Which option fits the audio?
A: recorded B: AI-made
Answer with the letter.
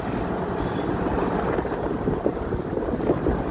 A